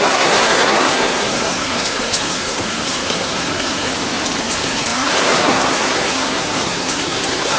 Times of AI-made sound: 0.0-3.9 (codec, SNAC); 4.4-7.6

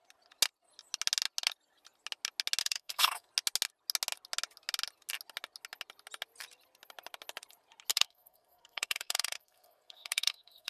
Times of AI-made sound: 2.6-3.3 (codec, SNAC); 7.9-10.7

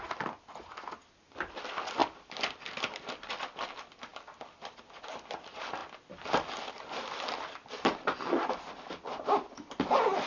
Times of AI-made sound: 2.0-3.3 (vocoder, BigVGAN v2); 4.1-5.0

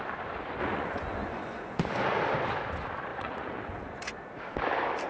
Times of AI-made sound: 0.6-1.8 (vocoder, Vocos); 3.1-4.1

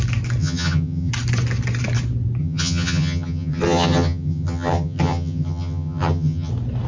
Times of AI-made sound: 0.4-1.1 (vocoder, HiFi-GAN); 2.4-6.5

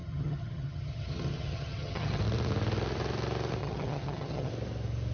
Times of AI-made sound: 0.0-2.2 (vocoder, HiFi-GAN); 3.6-4.5